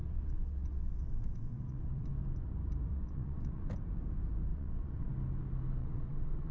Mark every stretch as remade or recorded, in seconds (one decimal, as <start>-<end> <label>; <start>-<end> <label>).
0.0-2.1 remade; 2.1-2.9 recorded; 2.9-3.6 remade; 3.6-4.5 recorded; 4.5-5.1 remade; 5.1-5.8 recorded; 5.8-6.5 remade